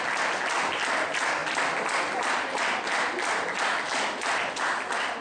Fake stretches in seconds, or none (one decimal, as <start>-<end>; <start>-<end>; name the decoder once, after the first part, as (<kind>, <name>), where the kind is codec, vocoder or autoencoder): none